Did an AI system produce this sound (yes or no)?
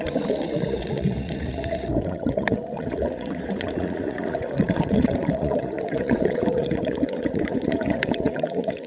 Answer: yes